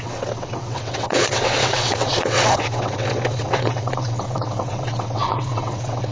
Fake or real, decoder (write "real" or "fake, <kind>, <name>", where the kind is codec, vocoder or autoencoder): fake, vocoder, WaveNeXt